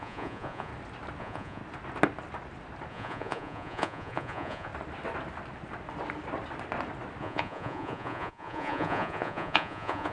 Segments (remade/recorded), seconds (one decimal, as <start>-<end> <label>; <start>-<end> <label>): 0.0-0.7 remade; 0.7-1.2 recorded; 1.2-1.6 remade; 1.6-2.9 recorded; 2.9-4.7 remade; 4.7-7.2 recorded; 7.2-10.1 remade